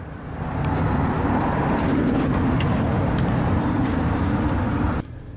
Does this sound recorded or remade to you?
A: remade